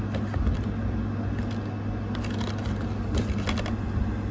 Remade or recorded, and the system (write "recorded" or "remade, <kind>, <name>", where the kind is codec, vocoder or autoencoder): recorded